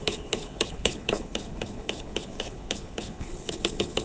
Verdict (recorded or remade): remade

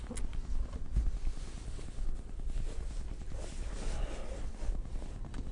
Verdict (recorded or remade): recorded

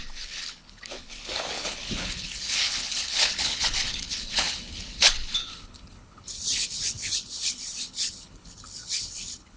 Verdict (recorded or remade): remade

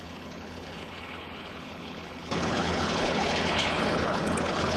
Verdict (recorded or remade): remade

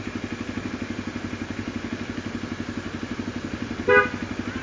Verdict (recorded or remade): recorded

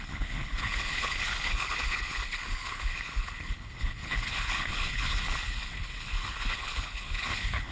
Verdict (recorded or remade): remade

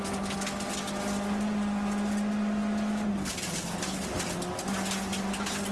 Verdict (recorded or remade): recorded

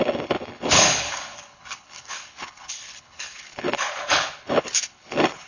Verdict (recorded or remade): remade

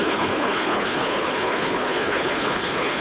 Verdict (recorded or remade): remade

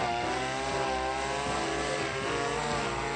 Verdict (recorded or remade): recorded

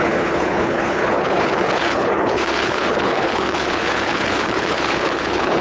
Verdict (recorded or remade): remade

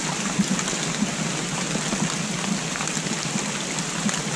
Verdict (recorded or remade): recorded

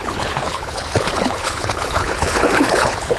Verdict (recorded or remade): remade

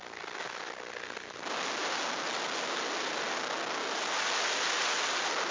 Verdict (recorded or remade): recorded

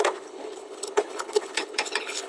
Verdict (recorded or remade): remade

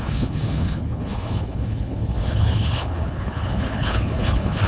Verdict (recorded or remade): remade